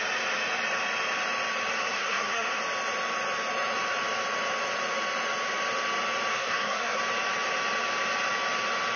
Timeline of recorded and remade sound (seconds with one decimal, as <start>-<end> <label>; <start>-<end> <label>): 0.0-1.7 recorded; 1.7-2.6 remade; 2.6-6.3 recorded; 6.3-7.0 remade; 7.0-9.0 recorded